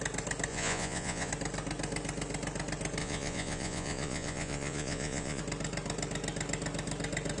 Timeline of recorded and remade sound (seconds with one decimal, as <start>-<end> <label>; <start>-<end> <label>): 0.0-0.5 recorded; 0.5-1.3 remade; 1.3-3.0 recorded; 3.0-5.4 remade; 5.4-7.4 recorded

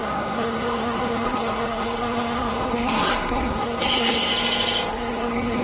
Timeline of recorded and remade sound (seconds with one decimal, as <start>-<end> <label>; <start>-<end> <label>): 0.0-4.3 remade; 4.3-4.9 recorded; 4.9-5.6 remade

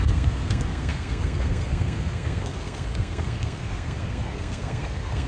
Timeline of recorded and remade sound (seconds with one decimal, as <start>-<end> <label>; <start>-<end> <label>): 0.0-5.3 remade

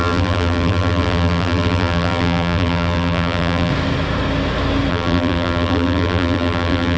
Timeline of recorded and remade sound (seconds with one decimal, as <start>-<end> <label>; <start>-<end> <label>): 0.0-3.7 remade; 3.7-4.9 recorded; 4.9-7.0 remade

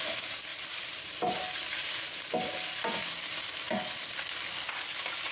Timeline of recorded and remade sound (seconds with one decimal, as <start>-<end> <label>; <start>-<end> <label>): 0.0-0.5 recorded; 0.5-3.7 remade; 3.7-5.3 recorded